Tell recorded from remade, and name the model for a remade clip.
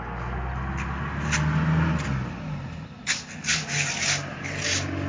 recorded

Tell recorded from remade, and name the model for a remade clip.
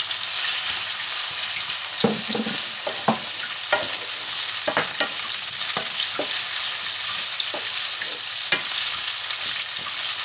recorded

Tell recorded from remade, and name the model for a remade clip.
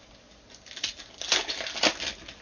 recorded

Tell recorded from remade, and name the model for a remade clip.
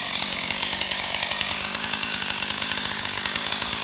remade, codec, DAC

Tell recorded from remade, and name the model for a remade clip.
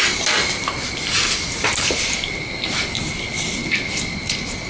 recorded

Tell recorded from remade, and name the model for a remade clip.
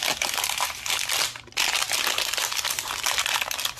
recorded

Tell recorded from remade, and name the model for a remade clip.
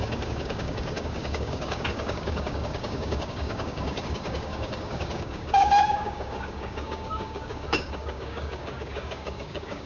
remade, codec, DAC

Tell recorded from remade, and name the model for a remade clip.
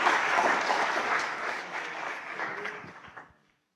remade, codec, DAC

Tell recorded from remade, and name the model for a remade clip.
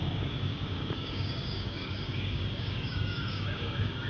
remade, codec, DAC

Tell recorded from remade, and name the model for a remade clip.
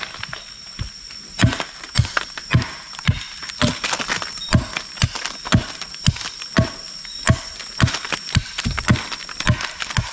recorded